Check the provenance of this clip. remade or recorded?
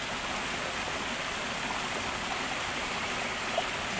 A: recorded